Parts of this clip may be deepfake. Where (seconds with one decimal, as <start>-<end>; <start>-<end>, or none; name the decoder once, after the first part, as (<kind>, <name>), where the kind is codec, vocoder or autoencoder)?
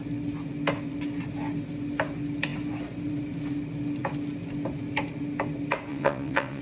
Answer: 5.9-6.6 (vocoder, WaveNeXt)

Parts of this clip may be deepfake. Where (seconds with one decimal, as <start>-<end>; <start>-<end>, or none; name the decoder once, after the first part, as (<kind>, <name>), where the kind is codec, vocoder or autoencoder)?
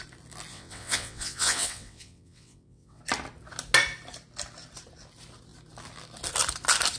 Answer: 0.5-3.0 (vocoder, WaveNeXt)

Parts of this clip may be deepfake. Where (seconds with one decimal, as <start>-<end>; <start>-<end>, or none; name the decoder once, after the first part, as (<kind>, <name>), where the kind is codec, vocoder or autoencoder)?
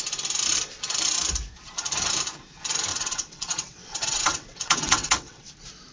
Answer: 2.9-5.5 (vocoder, WaveNeXt)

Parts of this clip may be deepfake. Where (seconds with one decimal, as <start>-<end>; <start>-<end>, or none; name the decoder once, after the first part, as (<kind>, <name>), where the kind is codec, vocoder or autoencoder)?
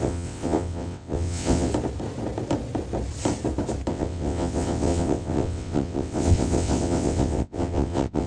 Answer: 0.0-1.7 (vocoder, WaveNeXt); 3.9-8.3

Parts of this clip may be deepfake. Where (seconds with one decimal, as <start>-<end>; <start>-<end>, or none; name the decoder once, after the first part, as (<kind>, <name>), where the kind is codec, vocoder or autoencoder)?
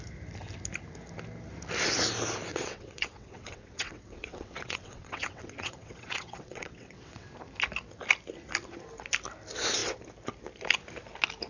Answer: 2.5-7.3 (vocoder, WaveNeXt)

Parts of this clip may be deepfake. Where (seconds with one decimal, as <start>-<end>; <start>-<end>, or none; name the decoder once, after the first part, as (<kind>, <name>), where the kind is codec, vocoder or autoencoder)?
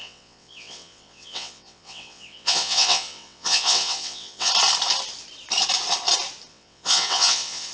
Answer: 0.0-4.5 (vocoder, WaveNeXt); 6.5-7.7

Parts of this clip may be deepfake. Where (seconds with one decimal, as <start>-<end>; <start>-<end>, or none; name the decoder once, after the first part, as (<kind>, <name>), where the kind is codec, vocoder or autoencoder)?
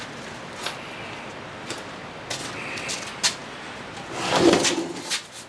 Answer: 2.4-2.9 (vocoder, WaveNeXt)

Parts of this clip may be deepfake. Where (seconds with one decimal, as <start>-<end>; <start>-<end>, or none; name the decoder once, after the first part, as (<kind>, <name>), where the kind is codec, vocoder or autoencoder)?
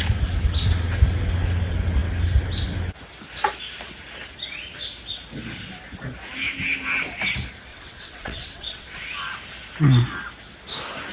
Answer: 7.7-9.0 (vocoder, WaveNeXt)